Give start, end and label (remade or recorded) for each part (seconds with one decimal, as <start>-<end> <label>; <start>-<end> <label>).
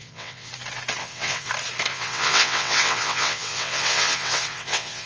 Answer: 0.0-0.5 remade; 0.5-1.0 recorded; 1.0-1.5 remade; 1.5-1.9 recorded; 1.9-5.1 remade